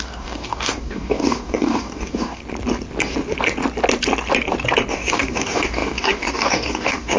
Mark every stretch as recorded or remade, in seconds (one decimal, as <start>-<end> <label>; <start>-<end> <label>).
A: 0.0-2.4 remade; 2.4-4.9 recorded; 4.9-7.2 remade